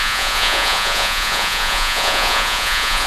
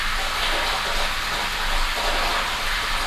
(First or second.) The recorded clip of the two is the second